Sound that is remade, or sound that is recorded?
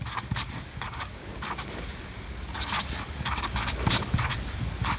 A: remade